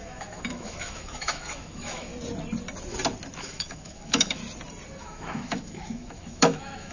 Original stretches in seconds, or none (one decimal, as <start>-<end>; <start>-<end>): 2.1-3.4; 4.4-5.0